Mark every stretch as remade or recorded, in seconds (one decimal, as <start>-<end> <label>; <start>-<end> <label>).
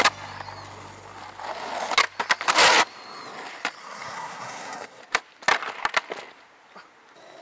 0.0-3.8 recorded; 3.8-5.0 remade; 5.0-7.4 recorded